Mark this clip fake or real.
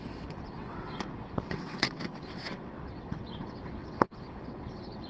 fake